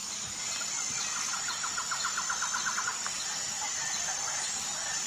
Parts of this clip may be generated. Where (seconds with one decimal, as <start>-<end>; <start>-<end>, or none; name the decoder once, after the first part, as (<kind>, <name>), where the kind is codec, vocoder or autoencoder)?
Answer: none